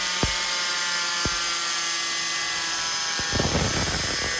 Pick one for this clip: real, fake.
real